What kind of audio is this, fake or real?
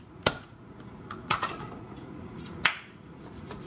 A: fake